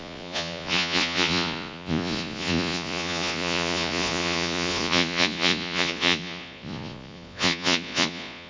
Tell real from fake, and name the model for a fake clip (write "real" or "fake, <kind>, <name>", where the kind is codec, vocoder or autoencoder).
fake, vocoder, Vocos